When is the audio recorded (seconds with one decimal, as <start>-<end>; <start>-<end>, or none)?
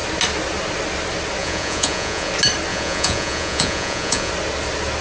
0.0-1.4; 2.3-2.7; 4.3-5.0